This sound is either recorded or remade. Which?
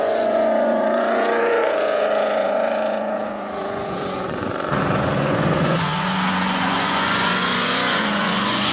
remade